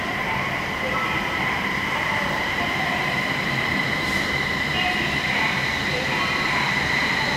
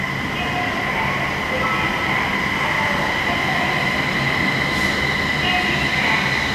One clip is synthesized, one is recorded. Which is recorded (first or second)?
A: second